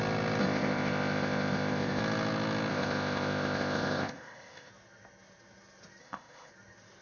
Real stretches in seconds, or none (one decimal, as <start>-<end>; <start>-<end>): 0.0-0.4; 2.0-2.7; 4.7-6.0; 6.5-7.0